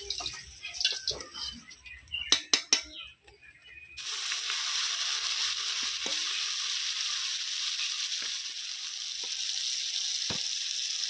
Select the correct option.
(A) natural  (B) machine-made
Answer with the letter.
A